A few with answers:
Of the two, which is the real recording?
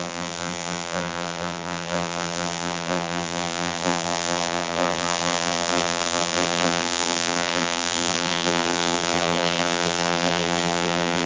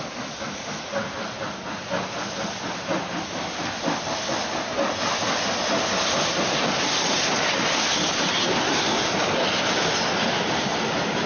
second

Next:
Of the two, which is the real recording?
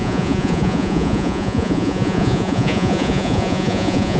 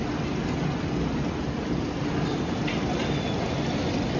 second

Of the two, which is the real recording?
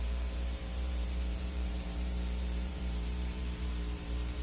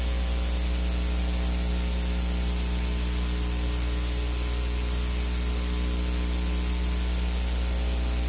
second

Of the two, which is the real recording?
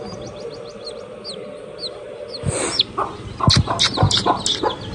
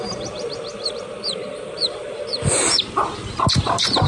first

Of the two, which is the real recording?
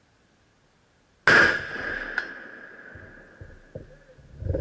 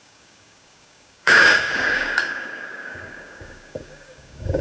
first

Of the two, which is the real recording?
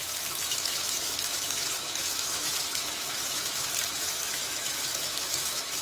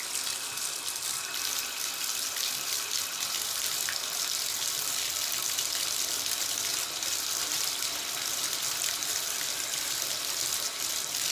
second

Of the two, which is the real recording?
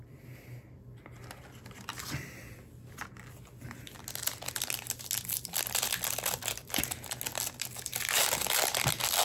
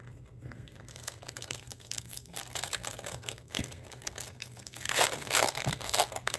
first